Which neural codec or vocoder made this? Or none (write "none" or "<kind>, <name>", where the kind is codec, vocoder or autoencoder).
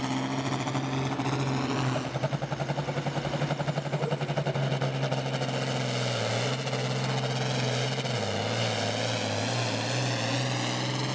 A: none